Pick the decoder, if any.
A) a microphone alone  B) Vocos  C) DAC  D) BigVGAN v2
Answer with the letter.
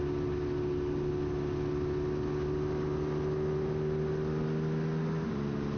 A